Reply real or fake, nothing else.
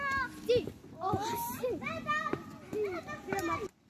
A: real